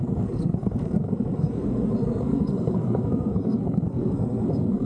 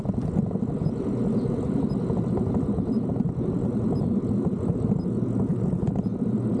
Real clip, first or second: second